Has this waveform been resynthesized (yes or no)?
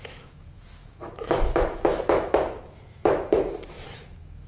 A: yes